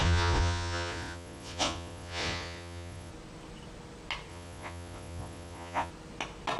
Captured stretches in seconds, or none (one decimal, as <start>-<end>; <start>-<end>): 3.1-4.3; 5.9-6.6